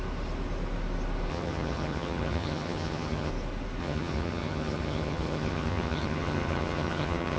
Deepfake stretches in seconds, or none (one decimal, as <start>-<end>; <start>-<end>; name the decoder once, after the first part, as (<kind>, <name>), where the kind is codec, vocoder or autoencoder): 1.3-3.3 (vocoder, HiFi-GAN); 3.8-7.4